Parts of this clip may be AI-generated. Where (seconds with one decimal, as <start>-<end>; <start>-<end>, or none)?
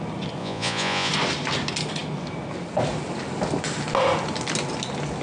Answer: 0.4-1.1